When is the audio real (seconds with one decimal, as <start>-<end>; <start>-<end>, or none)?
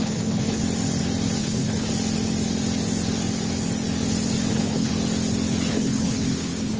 0.6-1.4; 1.9-4.5; 4.9-5.7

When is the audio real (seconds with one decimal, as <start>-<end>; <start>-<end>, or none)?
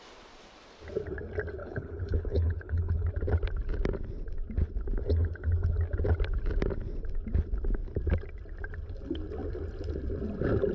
0.0-1.6; 3.1-10.7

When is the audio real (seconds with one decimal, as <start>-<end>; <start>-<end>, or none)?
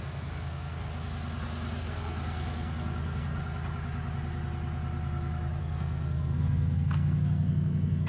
0.9-1.8; 3.4-5.6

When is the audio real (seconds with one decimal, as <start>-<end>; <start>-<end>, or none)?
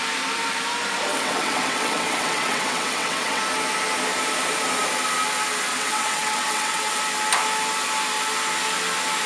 0.0-1.1; 3.4-5.7; 7.0-9.3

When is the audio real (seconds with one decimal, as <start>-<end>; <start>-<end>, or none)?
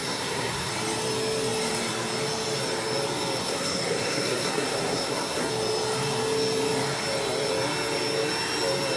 0.7-3.4; 5.5-9.0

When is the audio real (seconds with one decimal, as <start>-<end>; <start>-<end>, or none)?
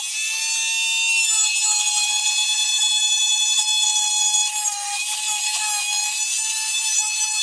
0.0-2.7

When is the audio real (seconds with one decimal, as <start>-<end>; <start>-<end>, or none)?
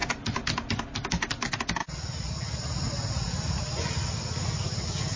0.0-5.2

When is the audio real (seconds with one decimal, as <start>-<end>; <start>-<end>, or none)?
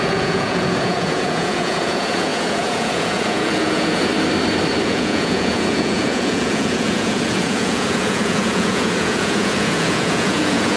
4.1-4.8